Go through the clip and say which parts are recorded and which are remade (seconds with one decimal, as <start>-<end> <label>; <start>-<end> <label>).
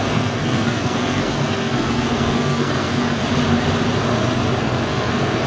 0.0-3.2 remade; 3.2-4.6 recorded; 4.6-5.5 remade